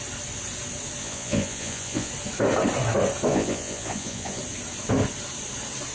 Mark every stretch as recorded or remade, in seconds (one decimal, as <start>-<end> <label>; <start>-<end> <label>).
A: 0.0-1.0 recorded; 1.0-2.1 remade; 2.1-3.3 recorded; 3.3-4.4 remade; 4.4-5.9 recorded